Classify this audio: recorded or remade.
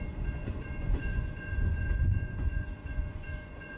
remade